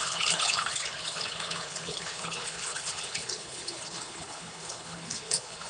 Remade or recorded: remade